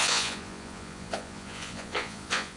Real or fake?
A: fake